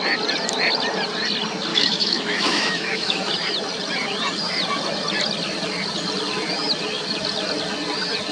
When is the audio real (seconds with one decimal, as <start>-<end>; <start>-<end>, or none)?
0.0-1.7; 3.3-8.3